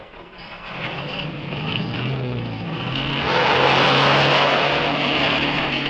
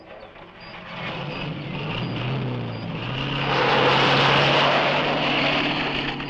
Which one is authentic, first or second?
second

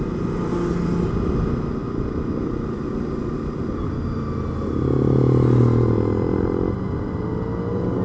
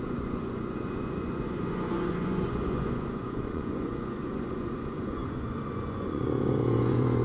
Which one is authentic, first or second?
first